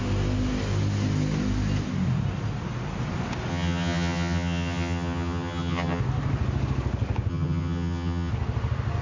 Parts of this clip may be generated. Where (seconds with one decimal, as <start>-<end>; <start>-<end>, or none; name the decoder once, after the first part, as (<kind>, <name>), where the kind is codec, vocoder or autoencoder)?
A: 3.5-6.0 (vocoder, HiFi-GAN); 7.3-8.3